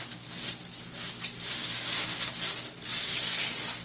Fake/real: real